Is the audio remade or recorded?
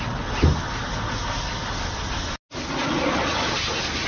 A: recorded